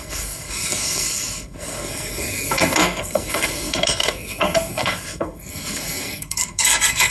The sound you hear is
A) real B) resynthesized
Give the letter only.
B